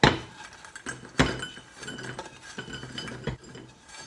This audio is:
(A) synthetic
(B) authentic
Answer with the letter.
B